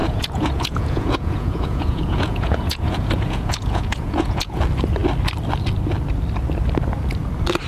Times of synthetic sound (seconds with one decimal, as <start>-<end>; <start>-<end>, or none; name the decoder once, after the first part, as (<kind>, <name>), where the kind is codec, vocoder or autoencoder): 0.0-4.6 (vocoder, Vocos)